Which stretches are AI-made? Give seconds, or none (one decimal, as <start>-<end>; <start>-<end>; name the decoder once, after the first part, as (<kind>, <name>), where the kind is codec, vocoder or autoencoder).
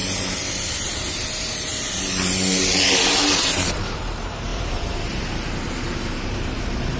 0.7-1.7 (vocoder, BigVGAN v2); 3.1-7.0